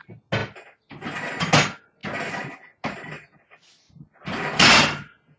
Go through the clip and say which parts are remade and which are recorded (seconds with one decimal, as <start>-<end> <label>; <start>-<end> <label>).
0.0-5.4 recorded